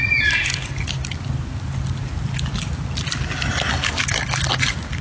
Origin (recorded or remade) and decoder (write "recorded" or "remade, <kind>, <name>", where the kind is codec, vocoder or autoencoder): recorded